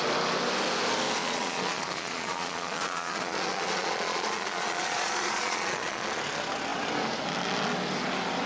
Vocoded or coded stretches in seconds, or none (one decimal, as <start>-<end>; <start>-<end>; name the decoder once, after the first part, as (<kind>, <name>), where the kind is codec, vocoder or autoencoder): 1.2-6.2 (vocoder, Vocos)